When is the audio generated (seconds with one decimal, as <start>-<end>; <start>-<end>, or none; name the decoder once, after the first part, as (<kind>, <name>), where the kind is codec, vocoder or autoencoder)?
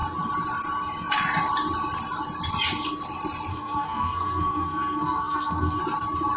3.5-5.8 (codec, SNAC)